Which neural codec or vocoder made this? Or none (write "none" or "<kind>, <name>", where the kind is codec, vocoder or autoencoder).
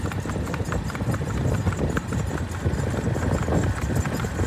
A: none